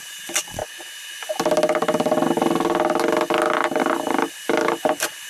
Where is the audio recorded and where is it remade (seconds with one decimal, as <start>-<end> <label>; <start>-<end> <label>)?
0.0-0.6 remade; 0.6-3.8 recorded; 3.8-5.3 remade